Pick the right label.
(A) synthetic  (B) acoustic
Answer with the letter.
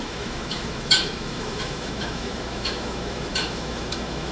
A